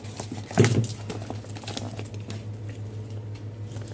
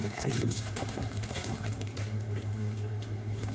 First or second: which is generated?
second